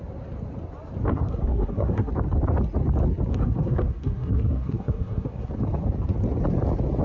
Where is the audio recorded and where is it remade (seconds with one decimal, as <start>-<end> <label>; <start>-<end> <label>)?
0.0-1.1 recorded; 1.1-2.1 remade; 2.1-3.3 recorded; 3.3-5.5 remade; 5.5-7.0 recorded